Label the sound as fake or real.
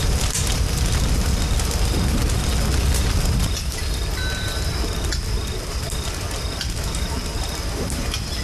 real